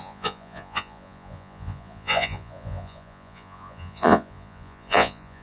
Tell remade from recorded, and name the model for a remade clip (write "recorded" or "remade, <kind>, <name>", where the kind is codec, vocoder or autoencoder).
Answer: remade, vocoder, Vocos